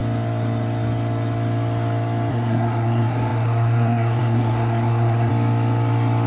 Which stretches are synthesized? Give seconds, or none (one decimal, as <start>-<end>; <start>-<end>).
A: 2.3-5.3